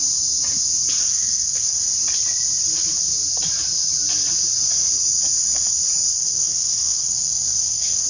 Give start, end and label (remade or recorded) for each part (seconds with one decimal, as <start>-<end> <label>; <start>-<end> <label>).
0.0-1.0 recorded; 1.0-1.9 remade; 1.9-6.1 recorded; 6.1-8.1 remade